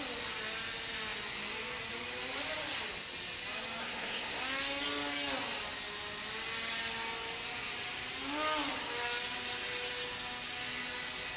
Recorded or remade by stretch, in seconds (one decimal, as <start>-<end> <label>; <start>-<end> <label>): 0.0-3.8 recorded; 3.8-4.4 remade; 4.4-11.4 recorded